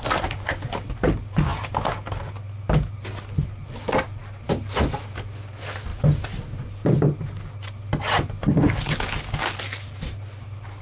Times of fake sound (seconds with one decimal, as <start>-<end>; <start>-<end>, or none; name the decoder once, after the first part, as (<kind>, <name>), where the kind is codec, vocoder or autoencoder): none